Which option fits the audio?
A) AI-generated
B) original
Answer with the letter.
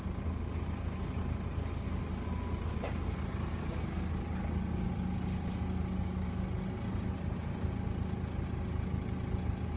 B